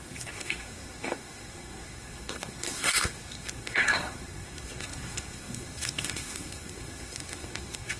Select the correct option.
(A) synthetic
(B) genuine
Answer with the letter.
A